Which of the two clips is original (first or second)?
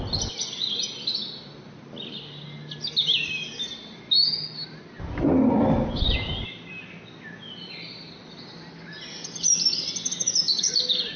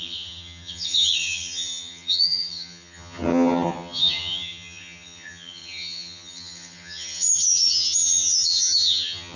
first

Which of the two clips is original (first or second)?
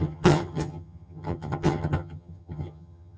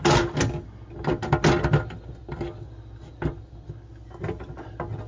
second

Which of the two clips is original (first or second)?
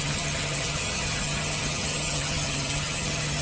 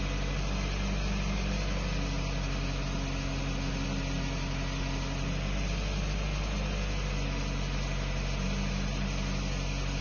second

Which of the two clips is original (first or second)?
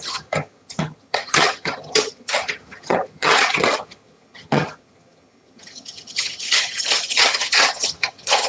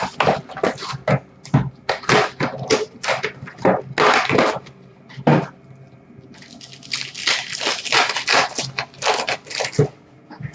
second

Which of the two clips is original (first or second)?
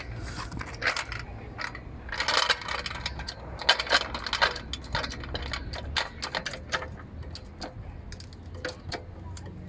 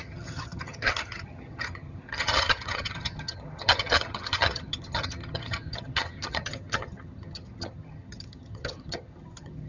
first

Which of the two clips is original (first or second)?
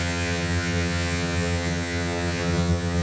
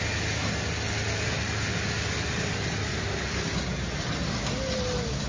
second